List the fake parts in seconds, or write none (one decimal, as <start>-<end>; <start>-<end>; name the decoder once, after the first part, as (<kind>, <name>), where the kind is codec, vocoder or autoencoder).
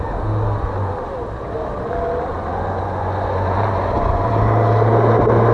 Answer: 2.3-4.3 (vocoder, Vocos)